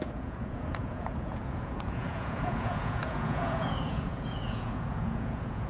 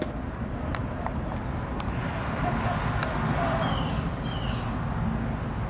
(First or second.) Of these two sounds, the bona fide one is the second